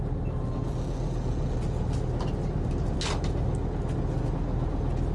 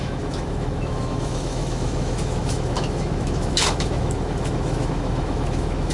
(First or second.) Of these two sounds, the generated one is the second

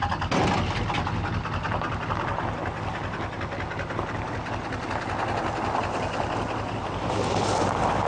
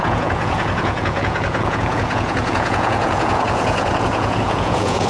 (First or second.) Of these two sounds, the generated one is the second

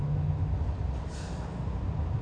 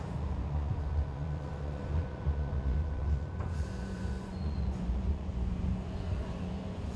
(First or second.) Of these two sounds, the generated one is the second